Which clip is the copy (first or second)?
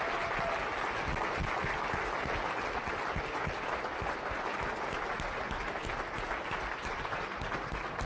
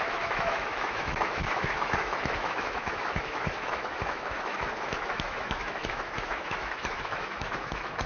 second